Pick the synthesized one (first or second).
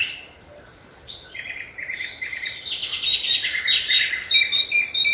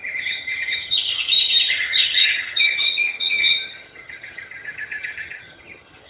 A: second